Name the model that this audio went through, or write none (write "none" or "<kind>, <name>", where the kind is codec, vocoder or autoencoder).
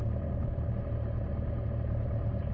none